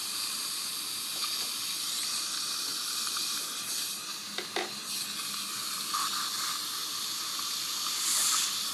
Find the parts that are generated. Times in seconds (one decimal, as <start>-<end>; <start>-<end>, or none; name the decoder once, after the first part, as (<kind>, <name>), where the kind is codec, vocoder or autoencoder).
0.0-2.7 (vocoder, BigVGAN v2); 7.9-8.7